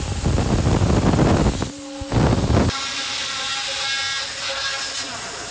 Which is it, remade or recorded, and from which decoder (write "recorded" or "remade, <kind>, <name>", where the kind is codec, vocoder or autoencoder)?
recorded